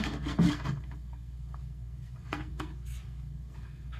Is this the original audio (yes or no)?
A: no